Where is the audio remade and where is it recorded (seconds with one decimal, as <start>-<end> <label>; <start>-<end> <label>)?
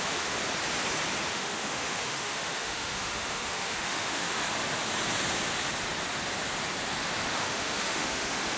0.0-0.4 remade; 0.4-1.3 recorded; 1.3-4.4 remade; 4.4-7.3 recorded; 7.3-8.6 remade